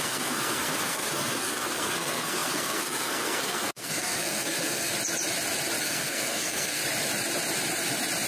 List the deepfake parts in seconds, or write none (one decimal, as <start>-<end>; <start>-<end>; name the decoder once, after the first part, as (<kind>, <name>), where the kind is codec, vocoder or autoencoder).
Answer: 0.0-4.9 (codec, SNAC); 5.8-6.8